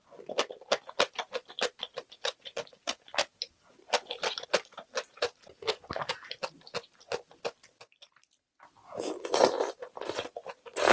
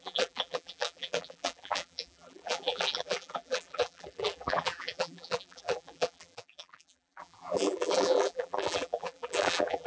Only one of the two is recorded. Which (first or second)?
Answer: first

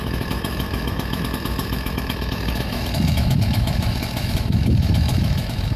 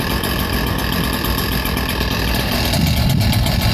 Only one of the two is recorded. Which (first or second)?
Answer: second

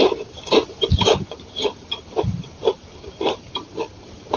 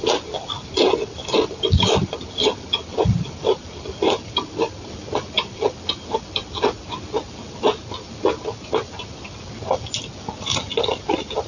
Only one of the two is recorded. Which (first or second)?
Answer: second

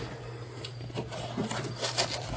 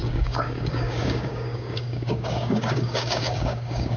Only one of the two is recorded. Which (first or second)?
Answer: first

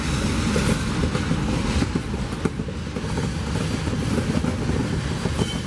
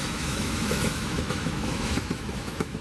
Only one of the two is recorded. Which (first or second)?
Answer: first